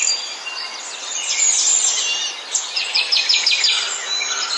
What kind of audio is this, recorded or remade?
recorded